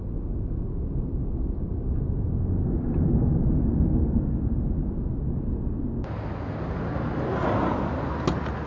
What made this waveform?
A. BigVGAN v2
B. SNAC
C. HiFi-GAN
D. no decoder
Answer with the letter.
D